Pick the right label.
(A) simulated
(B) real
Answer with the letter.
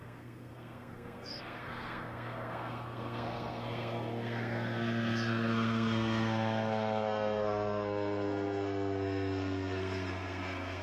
A